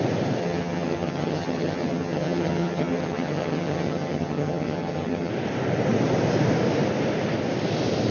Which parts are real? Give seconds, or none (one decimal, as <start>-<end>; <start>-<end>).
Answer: 0.0-0.4; 5.3-8.1

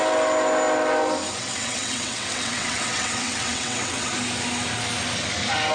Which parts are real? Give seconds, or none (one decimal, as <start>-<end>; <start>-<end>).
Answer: 0.0-1.4; 4.1-5.7

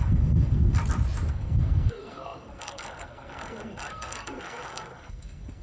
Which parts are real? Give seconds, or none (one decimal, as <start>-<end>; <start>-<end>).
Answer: 0.8-1.3

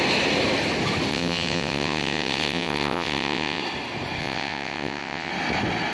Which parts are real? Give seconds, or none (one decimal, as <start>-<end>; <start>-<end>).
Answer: 0.0-1.1; 3.6-4.2; 5.3-5.9

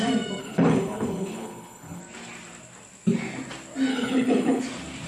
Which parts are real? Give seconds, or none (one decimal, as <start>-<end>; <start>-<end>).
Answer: 0.0-0.4; 2.0-3.9; 4.6-5.1

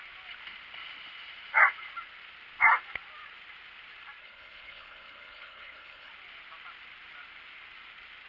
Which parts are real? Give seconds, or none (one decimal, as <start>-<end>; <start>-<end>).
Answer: 0.0-4.2; 6.1-8.3

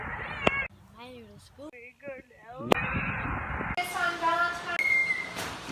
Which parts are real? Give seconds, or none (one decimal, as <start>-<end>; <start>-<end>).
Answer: 0.0-5.0

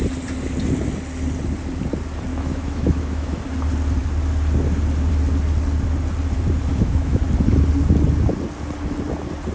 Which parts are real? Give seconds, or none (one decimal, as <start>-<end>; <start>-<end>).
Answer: 0.0-2.3; 3.4-6.7; 7.2-9.5